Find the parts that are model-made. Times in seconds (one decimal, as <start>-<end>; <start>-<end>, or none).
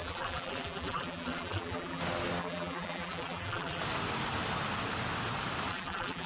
0.0-2.0; 2.4-3.8; 5.7-6.3